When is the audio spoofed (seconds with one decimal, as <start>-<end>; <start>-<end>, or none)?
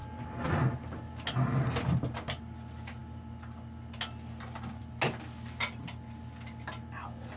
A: none